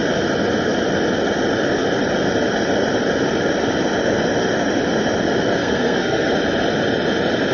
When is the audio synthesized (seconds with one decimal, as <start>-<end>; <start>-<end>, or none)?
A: 5.6-6.3

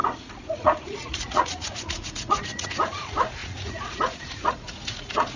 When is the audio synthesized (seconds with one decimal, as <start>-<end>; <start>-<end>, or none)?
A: 0.0-5.4

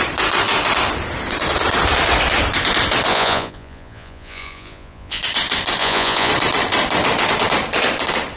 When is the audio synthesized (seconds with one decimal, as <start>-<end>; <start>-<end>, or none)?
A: 3.1-5.2; 5.8-6.3

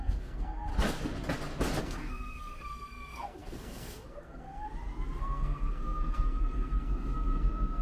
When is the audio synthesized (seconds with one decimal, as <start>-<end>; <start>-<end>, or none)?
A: 0.0-0.7; 1.8-4.7; 5.2-7.8